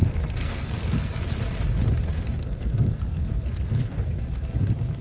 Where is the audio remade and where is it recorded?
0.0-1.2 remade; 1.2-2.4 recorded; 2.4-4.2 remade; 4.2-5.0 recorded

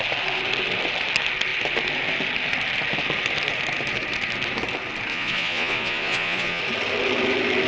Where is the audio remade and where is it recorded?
0.0-5.1 recorded; 5.1-6.6 remade; 6.6-7.7 recorded

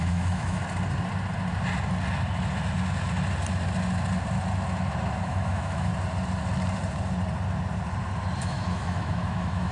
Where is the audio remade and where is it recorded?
0.0-0.6 remade; 0.6-5.2 recorded; 5.2-5.9 remade; 5.9-8.4 recorded; 8.4-9.7 remade